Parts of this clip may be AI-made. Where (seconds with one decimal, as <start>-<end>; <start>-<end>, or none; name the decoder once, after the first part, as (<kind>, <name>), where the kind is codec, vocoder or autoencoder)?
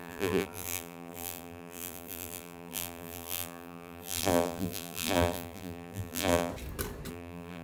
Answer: 0.0-6.5 (vocoder, BigVGAN v2); 7.1-7.6